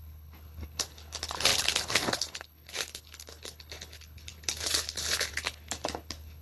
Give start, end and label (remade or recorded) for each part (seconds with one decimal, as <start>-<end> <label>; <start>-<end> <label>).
0.0-6.4 remade